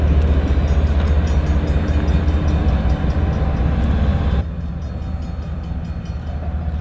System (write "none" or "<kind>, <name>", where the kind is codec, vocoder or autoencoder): none